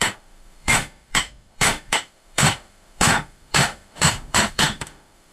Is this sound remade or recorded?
remade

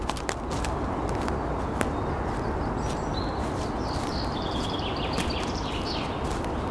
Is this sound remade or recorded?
recorded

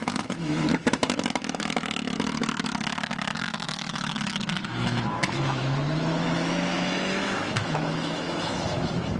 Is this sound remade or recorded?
remade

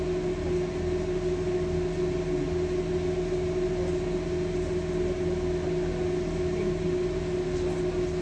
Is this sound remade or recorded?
recorded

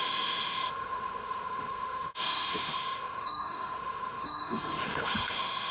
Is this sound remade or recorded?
remade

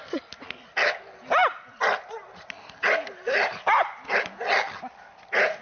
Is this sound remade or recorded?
recorded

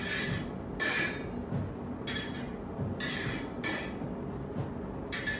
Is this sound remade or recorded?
recorded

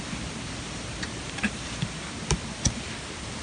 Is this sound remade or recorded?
recorded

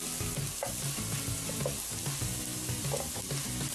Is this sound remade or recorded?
recorded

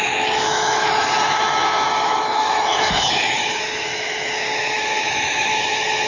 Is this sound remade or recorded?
remade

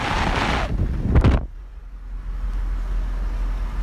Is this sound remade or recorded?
recorded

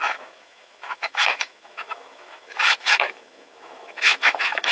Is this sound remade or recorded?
remade